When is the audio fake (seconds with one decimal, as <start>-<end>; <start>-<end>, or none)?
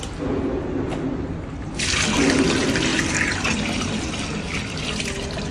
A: 2.9-4.0